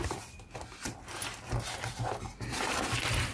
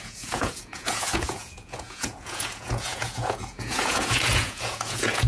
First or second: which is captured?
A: first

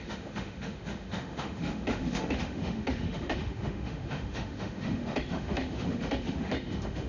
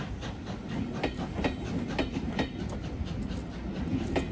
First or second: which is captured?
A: second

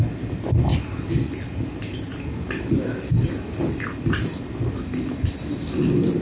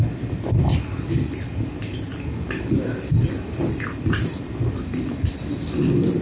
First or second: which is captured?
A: first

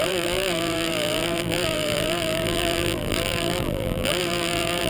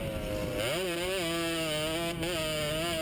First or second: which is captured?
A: second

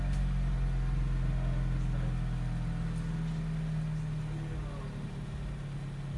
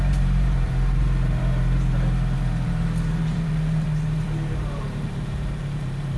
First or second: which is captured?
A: first